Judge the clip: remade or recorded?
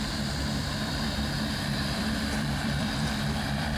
remade